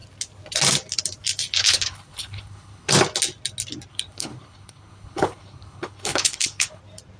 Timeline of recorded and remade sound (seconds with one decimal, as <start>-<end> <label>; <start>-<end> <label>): 0.0-1.6 recorded; 1.6-2.9 remade; 2.9-3.9 recorded; 3.9-6.8 remade; 6.8-7.2 recorded

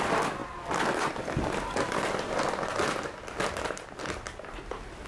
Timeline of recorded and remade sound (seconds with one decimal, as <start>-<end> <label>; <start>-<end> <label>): 0.0-5.1 recorded